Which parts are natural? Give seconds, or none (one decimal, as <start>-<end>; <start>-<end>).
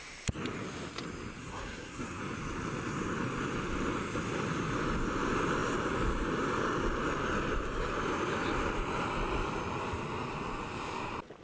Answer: 0.0-1.4; 2.2-11.4